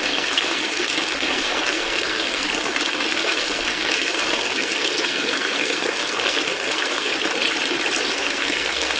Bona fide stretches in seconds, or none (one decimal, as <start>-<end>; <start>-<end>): 7.1-8.1